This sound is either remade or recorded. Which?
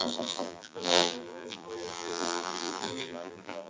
remade